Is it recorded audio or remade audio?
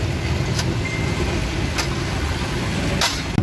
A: recorded